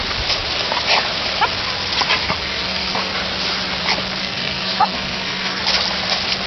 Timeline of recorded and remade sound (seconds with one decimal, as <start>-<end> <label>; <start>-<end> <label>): 0.0-2.4 recorded; 2.4-3.1 remade; 3.1-4.2 recorded; 4.2-5.6 remade; 5.6-6.5 recorded